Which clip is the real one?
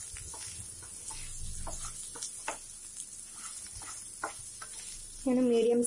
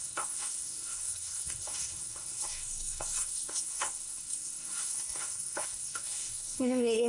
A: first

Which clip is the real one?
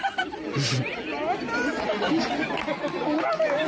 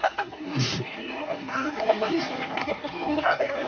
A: first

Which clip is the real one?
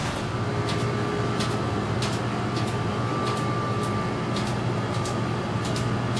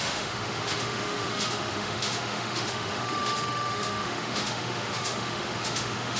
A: first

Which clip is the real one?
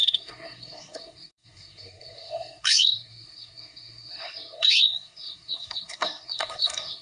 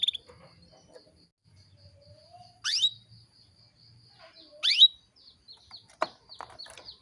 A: second